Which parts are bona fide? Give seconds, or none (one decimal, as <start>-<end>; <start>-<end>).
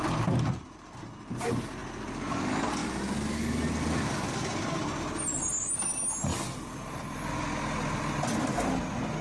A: 0.0-6.3; 8.7-9.2